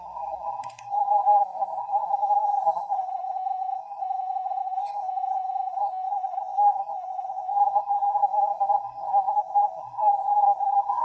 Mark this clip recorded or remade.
remade